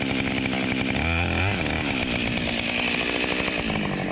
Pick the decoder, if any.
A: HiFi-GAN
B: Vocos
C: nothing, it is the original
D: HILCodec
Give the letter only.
C